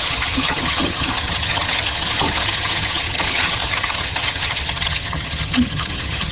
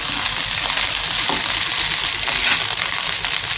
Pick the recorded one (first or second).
second